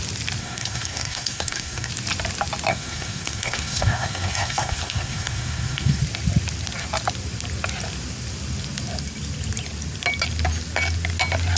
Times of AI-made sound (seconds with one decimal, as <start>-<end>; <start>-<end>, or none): 0.4-1.9; 2.7-6.0